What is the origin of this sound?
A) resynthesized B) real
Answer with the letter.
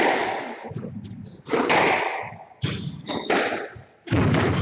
B